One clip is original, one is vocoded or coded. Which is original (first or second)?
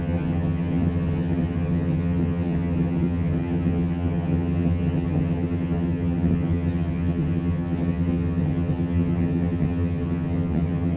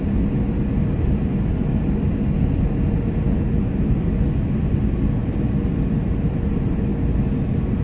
second